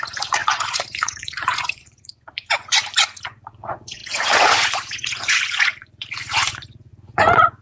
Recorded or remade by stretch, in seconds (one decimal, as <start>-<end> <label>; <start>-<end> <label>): 0.0-7.6 remade